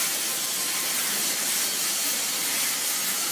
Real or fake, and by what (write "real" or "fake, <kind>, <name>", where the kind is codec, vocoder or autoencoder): real